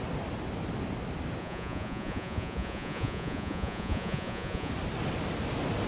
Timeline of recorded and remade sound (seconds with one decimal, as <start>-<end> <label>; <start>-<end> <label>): 0.0-1.4 recorded; 1.4-4.7 remade; 4.7-5.9 recorded